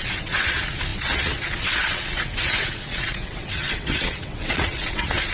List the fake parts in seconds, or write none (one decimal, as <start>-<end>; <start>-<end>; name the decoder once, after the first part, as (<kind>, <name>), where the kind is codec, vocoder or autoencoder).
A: 0.0-5.3 (vocoder, WaveNeXt)